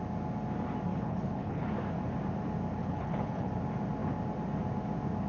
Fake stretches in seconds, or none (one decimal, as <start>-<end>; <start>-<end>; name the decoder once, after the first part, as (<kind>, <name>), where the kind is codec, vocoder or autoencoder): 0.9-1.7 (codec, HILCodec); 2.8-3.5